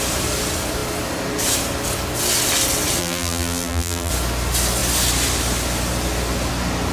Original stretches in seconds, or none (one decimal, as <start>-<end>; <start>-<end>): 0.0-3.0; 4.1-6.9